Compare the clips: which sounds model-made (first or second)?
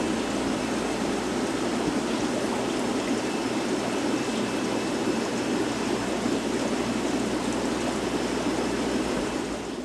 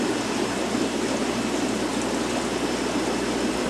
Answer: first